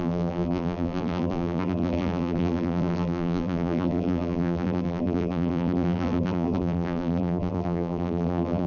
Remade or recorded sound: remade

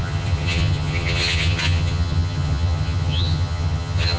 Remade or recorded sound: remade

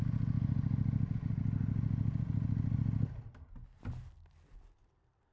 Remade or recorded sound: recorded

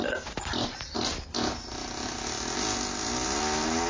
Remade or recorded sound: recorded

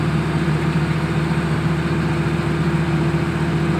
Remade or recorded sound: recorded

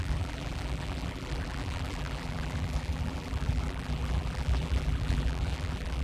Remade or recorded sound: remade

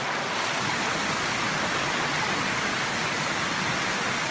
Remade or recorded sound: recorded